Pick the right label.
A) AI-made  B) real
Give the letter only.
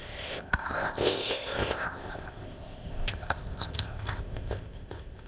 A